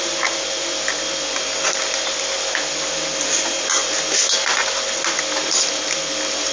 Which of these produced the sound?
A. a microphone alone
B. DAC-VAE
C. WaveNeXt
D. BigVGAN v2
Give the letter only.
A